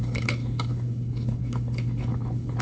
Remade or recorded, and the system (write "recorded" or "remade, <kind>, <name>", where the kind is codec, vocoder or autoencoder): remade, codec, HILCodec